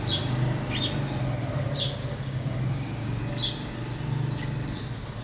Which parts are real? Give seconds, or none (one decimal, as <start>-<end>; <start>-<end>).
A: 0.0-2.0; 3.2-5.2